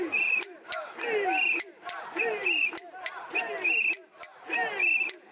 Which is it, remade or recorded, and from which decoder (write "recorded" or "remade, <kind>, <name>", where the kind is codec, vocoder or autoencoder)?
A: recorded